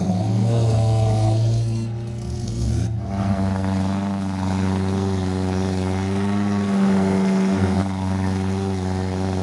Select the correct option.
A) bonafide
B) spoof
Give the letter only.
B